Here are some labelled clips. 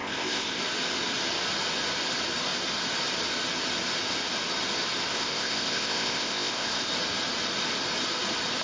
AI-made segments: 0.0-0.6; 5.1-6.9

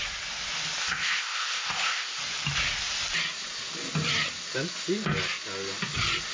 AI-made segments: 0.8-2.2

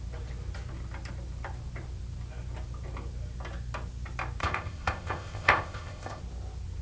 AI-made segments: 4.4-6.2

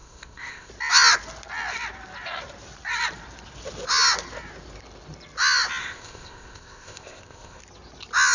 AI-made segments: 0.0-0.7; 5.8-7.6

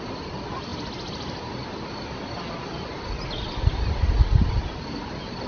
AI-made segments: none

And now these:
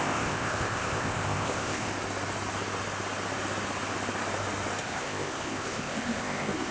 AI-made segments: 0.0-1.9; 4.8-6.7

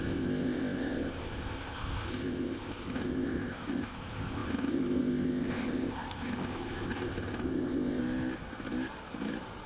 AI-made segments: 0.0-8.0

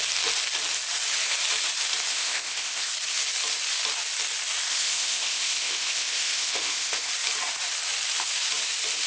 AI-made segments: 2.1-2.9; 4.7-7.1